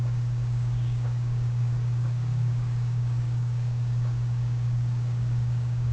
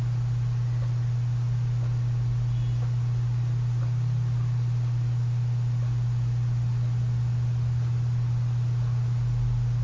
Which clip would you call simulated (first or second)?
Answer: first